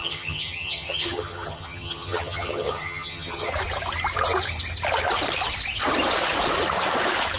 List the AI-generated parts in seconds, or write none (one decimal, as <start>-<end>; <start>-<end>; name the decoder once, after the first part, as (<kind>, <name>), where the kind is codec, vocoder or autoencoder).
0.0-3.5 (vocoder, HiFi-GAN)